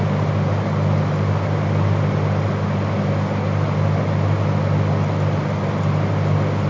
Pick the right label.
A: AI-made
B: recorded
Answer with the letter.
B